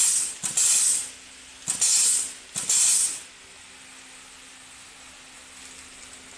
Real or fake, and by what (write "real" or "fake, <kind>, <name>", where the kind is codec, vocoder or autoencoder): real